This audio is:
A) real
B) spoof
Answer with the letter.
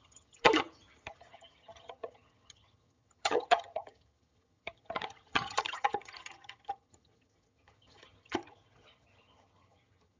B